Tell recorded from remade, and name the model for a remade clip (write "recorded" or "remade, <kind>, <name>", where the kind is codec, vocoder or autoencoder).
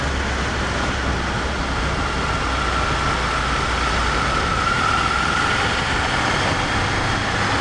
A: recorded